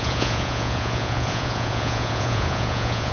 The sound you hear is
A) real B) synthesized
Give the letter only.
B